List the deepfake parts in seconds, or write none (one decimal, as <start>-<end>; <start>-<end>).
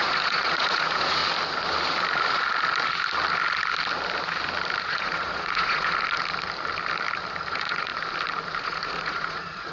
0.0-1.2; 4.8-5.9; 7.5-7.9; 8.6-9.7